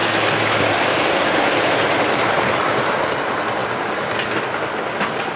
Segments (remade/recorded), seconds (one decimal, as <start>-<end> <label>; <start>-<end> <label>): 0.0-1.7 remade; 1.7-5.4 recorded